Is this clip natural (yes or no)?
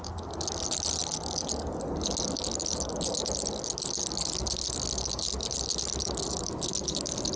yes